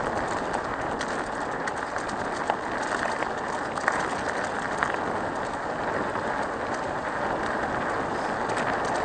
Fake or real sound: real